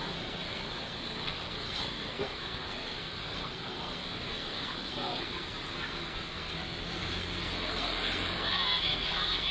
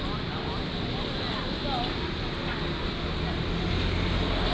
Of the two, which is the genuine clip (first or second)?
second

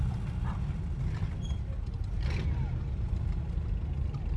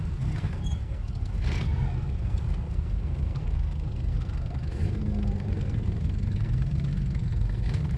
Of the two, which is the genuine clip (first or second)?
first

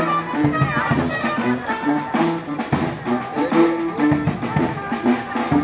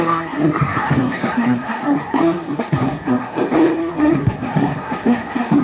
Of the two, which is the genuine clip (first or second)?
first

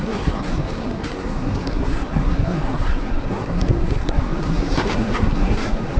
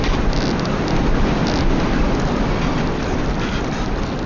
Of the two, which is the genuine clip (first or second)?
second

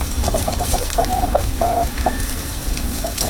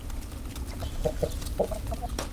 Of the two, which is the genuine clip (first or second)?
second